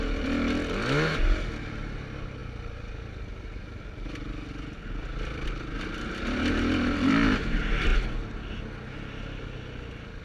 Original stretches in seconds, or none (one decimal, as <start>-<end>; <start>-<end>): 0.0-10.2